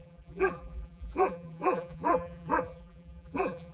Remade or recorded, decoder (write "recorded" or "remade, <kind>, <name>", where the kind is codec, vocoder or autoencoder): remade, vocoder, BigVGAN v2